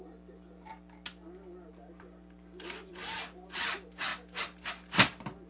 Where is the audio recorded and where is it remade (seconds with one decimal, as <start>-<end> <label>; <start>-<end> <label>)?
0.0-5.5 recorded